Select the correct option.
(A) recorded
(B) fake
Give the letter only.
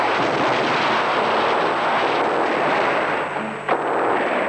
A